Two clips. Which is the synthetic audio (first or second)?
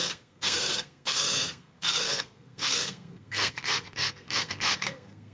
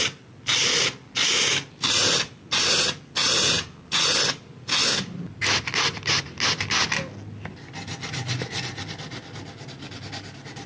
first